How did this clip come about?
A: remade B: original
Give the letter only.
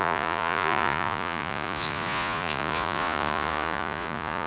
A